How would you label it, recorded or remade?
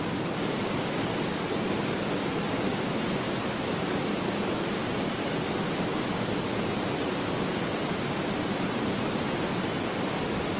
recorded